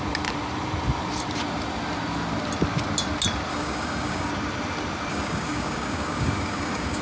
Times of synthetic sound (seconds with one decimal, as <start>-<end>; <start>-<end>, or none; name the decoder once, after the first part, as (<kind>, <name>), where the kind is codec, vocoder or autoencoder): 3.5-4.3 (codec, DAC); 5.1-7.0

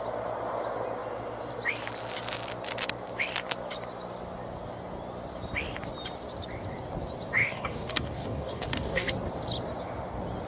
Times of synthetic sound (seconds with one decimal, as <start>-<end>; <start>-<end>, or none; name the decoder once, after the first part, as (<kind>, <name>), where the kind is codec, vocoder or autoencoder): 7.4-9.1 (codec, DAC)

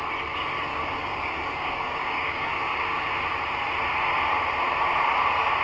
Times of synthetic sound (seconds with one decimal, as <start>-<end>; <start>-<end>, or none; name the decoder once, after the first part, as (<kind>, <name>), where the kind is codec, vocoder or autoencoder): 0.7-3.2 (codec, DAC)